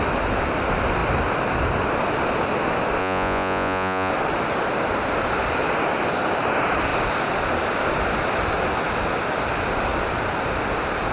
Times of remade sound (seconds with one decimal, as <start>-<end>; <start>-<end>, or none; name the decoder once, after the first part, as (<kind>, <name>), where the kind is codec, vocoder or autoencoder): 3.0-4.1 (vocoder, Vocos)